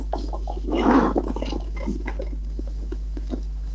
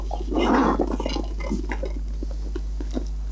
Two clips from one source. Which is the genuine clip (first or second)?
second